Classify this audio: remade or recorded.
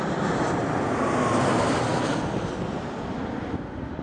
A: recorded